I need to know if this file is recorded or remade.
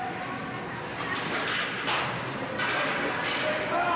recorded